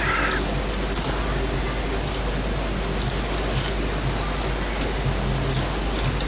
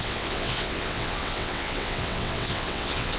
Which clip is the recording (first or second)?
first